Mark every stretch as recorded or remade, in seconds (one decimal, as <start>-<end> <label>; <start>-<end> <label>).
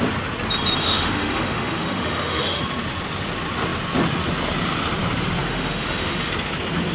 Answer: 0.0-0.8 recorded; 0.8-2.6 remade; 2.6-5.4 recorded; 5.4-6.3 remade; 6.3-6.9 recorded